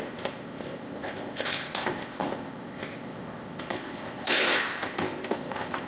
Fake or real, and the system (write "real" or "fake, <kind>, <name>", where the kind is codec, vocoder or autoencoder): fake, codec, ZipCodec